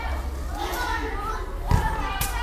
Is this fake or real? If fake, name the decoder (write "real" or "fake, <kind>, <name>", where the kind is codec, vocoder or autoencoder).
real